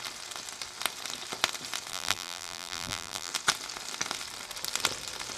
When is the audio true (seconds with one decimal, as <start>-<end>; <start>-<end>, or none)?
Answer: 0.0-1.9; 3.3-5.4